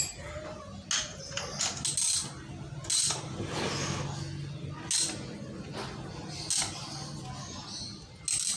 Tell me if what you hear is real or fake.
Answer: real